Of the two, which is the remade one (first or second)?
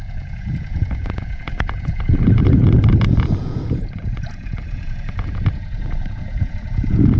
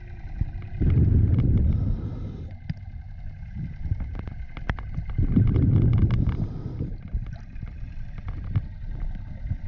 first